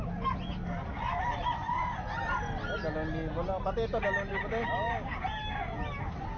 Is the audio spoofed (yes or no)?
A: no